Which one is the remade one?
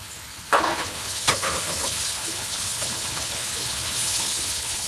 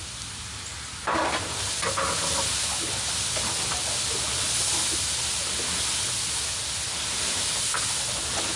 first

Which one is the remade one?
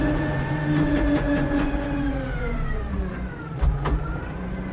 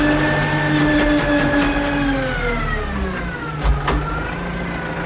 first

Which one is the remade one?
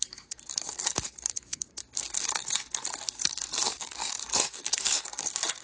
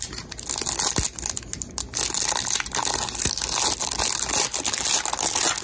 first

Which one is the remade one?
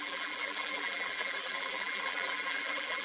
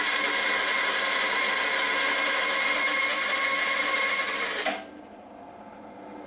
first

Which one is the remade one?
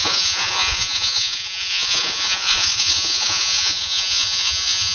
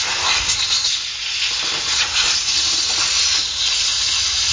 first